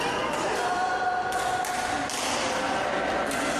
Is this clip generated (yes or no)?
no